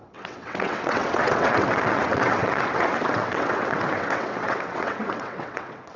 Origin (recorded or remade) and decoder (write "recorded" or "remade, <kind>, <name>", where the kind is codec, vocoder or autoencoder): remade, vocoder, WaveNeXt